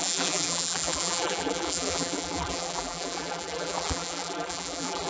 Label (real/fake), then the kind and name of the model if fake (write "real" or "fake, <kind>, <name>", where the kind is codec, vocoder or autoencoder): fake, vocoder, BigVGAN v2